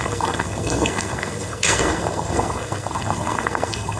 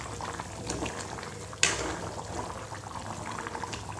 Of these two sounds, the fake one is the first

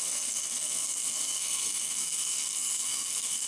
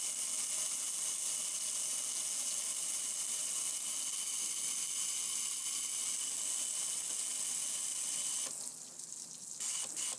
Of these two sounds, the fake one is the first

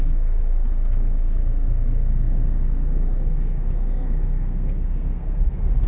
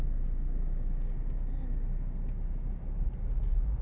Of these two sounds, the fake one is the first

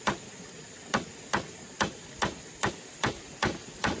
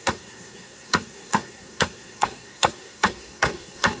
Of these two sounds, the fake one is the second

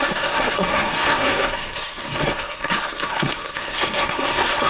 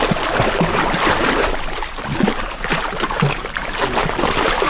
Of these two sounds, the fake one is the first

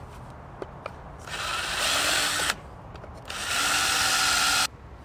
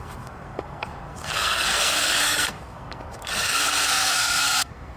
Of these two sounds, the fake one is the second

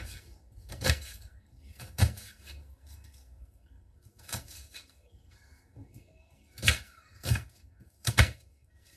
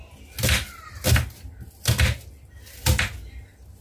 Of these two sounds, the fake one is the first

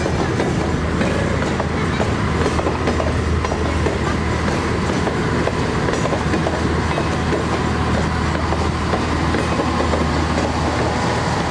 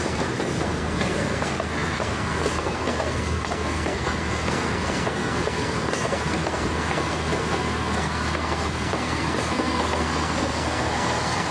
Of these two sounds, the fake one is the second